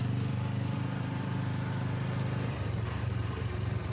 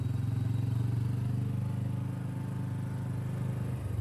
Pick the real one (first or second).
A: second